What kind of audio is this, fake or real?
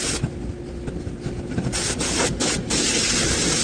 real